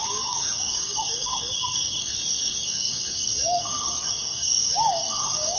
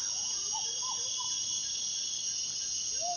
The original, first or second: second